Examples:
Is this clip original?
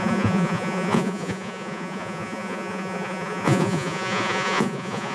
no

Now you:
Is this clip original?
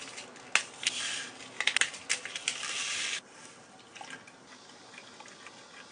yes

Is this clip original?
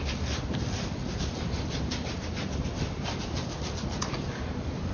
yes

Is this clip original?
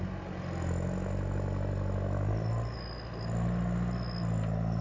yes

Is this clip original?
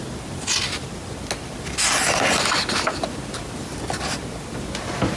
yes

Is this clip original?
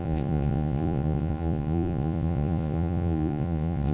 no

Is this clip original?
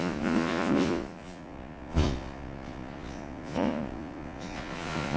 no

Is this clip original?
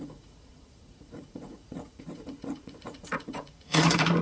no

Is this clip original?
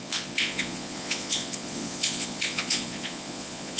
no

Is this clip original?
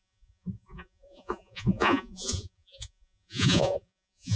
no